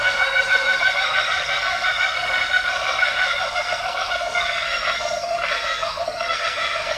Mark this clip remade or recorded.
remade